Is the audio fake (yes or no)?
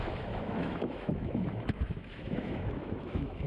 yes